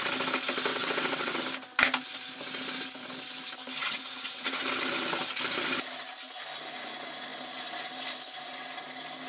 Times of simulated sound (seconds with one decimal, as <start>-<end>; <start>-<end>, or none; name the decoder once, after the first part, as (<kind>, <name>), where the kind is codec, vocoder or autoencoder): 0.7-1.4 (vocoder, WaveNeXt); 3.8-4.6